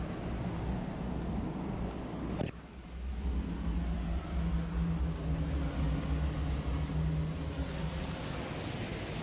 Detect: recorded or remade recorded